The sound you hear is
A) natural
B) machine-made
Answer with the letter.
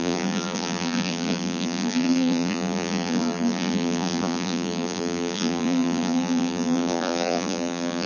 B